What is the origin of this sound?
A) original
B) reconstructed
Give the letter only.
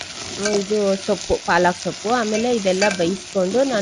A